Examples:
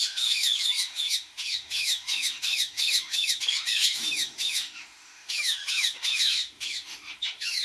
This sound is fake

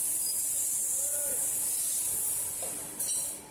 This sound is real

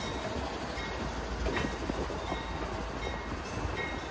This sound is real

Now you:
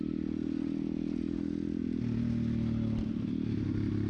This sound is real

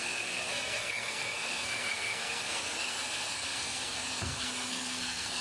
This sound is fake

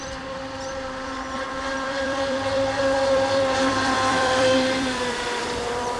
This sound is fake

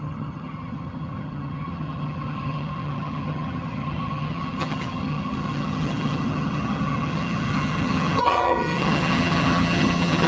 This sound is fake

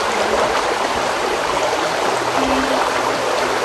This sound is real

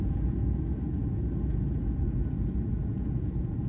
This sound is fake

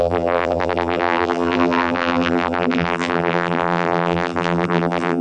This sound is fake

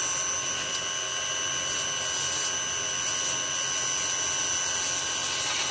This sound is real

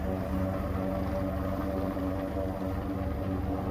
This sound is real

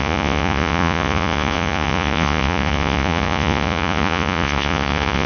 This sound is fake